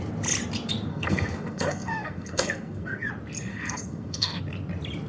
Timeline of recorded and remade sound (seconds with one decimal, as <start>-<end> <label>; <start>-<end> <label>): 0.0-0.9 recorded; 0.9-3.1 remade; 3.1-3.5 recorded; 3.5-4.4 remade; 4.4-5.1 recorded